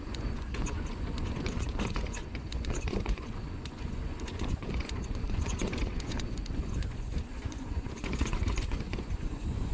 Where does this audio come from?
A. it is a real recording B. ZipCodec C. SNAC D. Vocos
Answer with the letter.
D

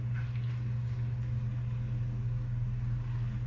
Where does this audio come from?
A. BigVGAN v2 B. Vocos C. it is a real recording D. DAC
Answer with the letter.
C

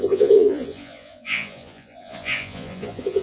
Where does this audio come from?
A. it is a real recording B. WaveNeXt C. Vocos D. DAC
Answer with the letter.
C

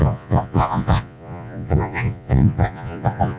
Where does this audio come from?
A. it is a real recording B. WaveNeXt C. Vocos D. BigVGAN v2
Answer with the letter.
C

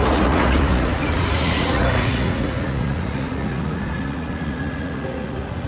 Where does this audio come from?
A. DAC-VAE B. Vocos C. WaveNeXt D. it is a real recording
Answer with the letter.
B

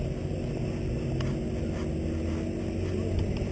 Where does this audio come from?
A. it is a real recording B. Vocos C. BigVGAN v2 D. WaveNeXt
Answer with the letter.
A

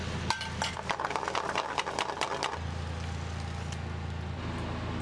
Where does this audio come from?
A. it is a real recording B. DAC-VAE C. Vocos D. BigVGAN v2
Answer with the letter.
A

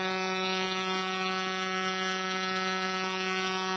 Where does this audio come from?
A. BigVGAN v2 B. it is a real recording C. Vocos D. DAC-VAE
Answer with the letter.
C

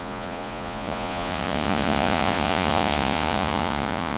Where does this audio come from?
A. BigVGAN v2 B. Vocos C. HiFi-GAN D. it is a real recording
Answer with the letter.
B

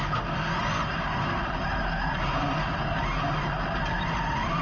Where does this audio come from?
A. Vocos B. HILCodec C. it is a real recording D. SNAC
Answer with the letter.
C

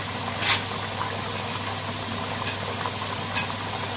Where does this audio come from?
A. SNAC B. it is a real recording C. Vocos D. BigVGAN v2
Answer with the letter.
B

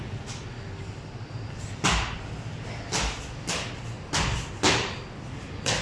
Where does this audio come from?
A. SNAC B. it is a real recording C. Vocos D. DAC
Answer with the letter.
B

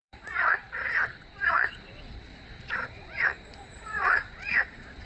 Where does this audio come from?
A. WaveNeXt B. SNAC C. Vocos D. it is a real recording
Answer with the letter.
C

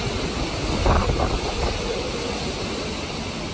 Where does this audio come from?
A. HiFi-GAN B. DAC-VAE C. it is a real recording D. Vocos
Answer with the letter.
C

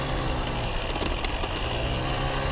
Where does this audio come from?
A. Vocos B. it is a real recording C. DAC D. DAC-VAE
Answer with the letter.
B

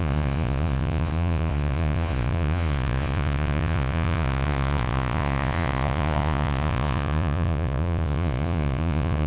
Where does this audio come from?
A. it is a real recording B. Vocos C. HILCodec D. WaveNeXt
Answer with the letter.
B